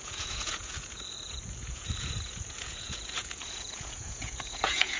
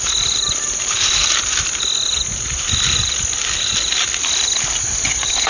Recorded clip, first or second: second